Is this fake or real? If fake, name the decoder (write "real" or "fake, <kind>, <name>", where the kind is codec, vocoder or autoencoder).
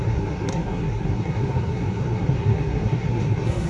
fake, codec, SNAC